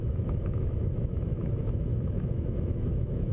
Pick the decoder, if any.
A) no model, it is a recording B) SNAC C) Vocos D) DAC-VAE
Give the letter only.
D